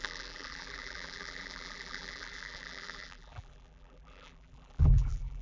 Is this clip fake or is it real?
fake